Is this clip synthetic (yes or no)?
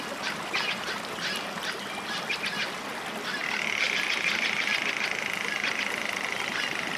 no